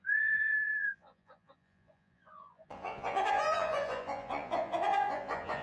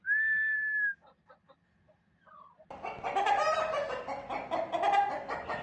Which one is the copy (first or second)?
first